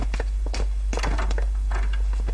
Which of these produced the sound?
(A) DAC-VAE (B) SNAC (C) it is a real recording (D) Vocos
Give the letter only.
C